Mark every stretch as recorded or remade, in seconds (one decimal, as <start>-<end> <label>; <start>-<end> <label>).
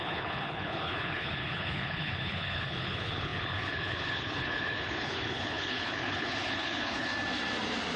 0.0-7.1 remade; 7.1-8.0 recorded